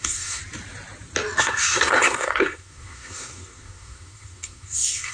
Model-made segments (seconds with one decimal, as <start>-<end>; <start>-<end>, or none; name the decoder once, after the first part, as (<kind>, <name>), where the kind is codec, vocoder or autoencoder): 0.0-0.4 (codec, SNAC); 1.4-5.1